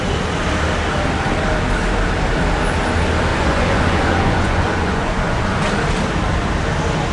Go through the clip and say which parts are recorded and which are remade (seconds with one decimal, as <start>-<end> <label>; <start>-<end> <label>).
0.0-3.3 recorded; 3.3-5.6 remade; 5.6-7.1 recorded